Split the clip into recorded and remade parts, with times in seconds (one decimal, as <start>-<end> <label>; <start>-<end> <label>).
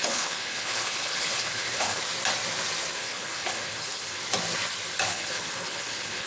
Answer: 0.0-2.0 remade; 2.0-3.0 recorded; 3.0-4.2 remade; 4.2-5.1 recorded; 5.1-6.3 remade